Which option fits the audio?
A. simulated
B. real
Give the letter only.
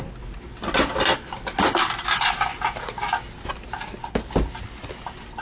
B